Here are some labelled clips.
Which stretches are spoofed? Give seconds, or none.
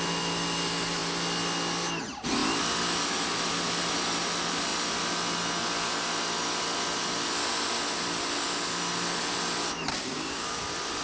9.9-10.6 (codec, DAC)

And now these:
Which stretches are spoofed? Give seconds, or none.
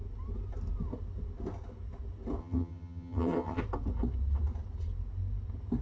2.4-3.6 (vocoder, HiFi-GAN)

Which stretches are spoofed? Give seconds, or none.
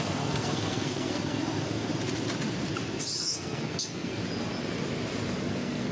0.0-1.9 (codec, SNAC); 3.2-4.2; 5.5-5.9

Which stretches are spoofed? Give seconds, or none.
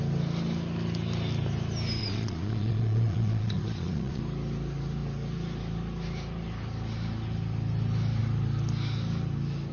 2.0-4.2 (vocoder, Vocos)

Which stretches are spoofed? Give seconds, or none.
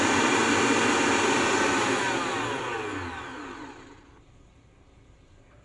none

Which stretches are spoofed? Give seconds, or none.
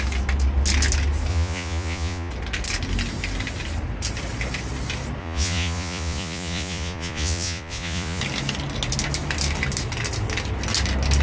1.3-2.3 (vocoder, Vocos); 5.2-8.2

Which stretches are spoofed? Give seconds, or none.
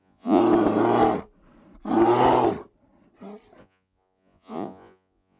0.0-0.4 (vocoder, Vocos); 3.6-5.4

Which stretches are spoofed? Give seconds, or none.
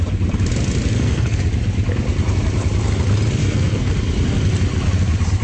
0.9-1.4 (codec, SNAC); 3.4-3.9